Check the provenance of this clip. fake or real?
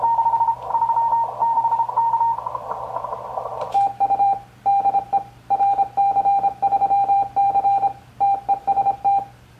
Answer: fake